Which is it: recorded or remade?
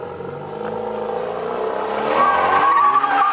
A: recorded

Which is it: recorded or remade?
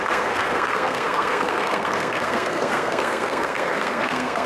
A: remade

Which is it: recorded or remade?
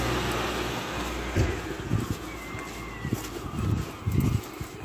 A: recorded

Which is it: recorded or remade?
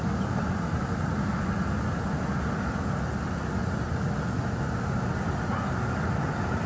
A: recorded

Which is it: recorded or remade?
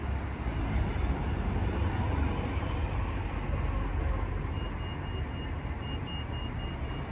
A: recorded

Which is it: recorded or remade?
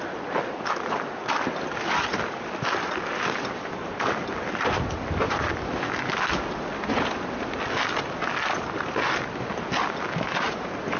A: recorded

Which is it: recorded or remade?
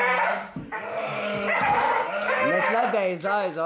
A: recorded